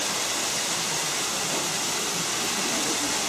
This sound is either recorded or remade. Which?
recorded